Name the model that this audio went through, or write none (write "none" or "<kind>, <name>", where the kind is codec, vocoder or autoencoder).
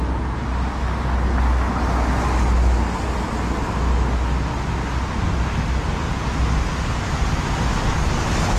none